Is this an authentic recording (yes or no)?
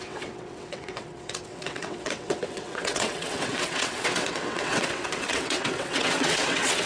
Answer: no